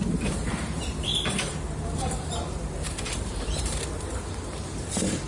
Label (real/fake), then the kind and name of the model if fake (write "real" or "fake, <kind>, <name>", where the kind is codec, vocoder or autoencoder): fake, vocoder, BigVGAN v2